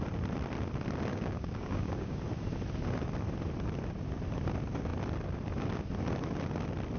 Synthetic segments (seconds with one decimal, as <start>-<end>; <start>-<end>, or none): 1.1-2.2